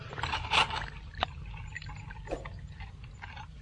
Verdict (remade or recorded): recorded